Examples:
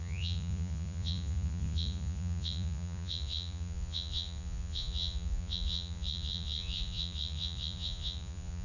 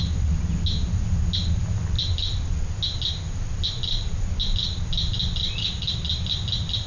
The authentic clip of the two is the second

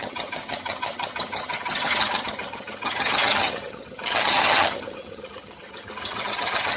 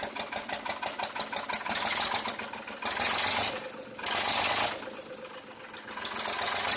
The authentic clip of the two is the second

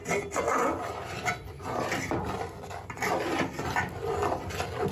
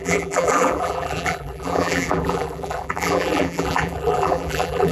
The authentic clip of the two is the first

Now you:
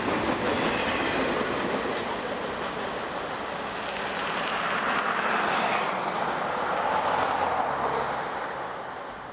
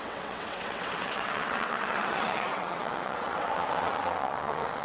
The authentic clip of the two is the first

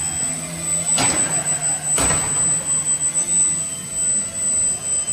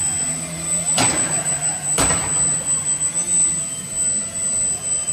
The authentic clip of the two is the first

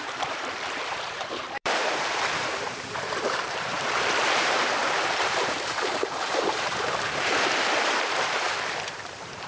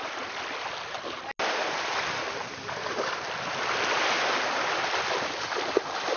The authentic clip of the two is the second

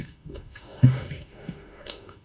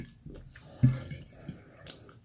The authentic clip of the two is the second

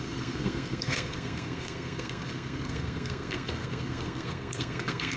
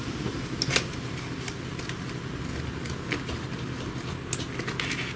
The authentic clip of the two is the second